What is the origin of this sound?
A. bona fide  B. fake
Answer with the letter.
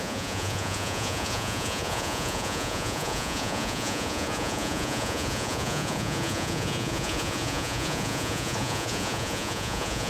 B